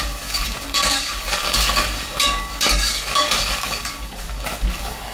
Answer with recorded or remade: remade